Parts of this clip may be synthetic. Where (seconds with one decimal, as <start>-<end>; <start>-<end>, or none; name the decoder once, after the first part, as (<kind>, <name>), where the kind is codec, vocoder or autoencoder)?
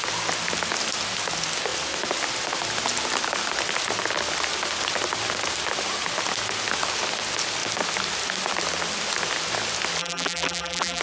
10.0-11.0 (vocoder, BigVGAN v2)